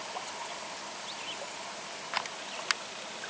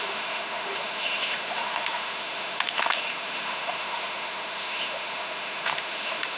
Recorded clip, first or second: first